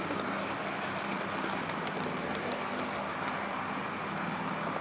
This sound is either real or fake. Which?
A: real